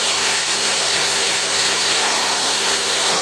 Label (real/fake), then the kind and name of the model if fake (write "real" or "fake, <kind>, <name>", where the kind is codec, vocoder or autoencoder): fake, codec, SNAC